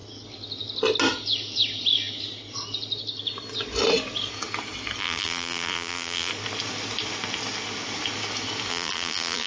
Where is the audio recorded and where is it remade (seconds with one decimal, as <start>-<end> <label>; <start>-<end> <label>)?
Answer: 0.0-5.0 recorded; 5.0-6.3 remade; 6.3-8.7 recorded; 8.7-9.5 remade